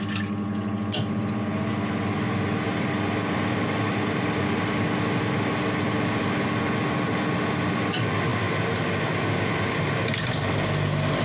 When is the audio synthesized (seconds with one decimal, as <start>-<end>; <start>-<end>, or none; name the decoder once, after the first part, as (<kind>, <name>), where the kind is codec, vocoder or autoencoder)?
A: none